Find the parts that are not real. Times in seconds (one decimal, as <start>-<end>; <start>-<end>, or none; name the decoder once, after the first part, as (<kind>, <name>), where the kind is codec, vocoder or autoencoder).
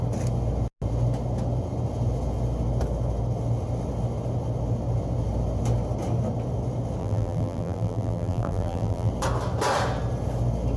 7.0-9.1 (vocoder, BigVGAN v2)